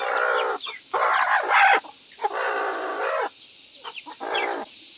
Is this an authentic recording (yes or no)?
yes